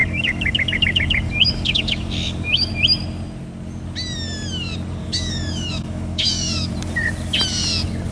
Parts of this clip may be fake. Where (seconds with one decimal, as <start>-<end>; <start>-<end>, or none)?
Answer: 0.0-2.7; 5.0-6.7

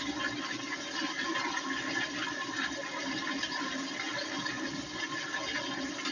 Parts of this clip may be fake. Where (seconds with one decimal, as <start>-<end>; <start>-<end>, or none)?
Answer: none

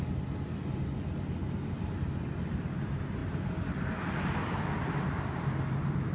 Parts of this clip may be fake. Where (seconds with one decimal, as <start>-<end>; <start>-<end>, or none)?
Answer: none

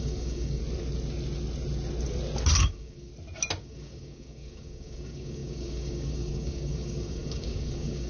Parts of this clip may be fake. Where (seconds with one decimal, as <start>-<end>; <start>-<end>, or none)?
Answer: 0.0-0.6; 2.6-3.1; 3.6-8.1

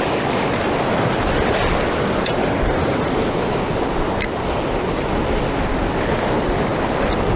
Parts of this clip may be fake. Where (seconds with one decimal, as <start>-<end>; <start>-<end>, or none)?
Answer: none